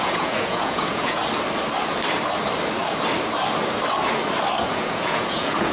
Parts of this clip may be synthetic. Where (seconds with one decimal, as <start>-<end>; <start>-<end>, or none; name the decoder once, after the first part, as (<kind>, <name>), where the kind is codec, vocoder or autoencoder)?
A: 0.0-1.2 (vocoder, Vocos); 4.6-5.7